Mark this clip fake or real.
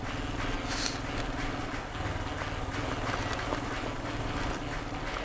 real